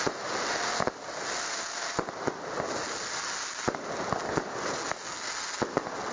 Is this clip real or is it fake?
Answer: real